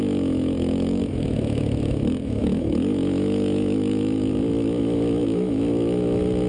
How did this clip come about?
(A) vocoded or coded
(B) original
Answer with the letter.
A